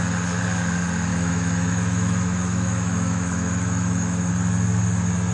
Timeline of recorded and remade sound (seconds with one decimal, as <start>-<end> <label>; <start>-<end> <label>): 0.0-1.1 recorded; 1.1-4.3 remade; 4.3-5.3 recorded